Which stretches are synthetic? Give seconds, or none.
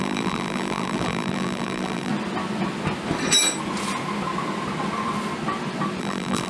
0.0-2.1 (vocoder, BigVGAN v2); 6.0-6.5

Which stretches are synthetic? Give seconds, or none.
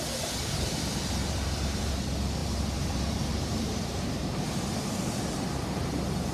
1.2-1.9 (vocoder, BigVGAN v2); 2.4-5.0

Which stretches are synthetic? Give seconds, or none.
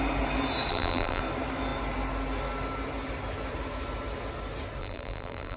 0.7-1.2 (vocoder, BigVGAN v2); 4.8-5.6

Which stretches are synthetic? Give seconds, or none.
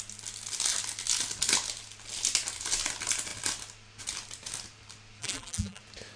5.2-5.8 (vocoder, BigVGAN v2)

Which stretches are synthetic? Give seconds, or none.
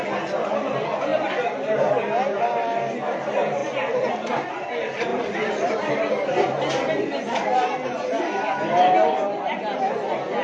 5.1-5.9 (vocoder, BigVGAN v2)